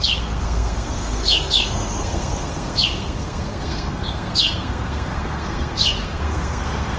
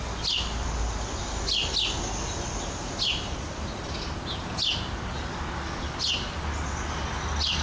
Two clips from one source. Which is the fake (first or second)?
first